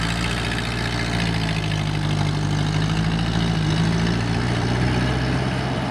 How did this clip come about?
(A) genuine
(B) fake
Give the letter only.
A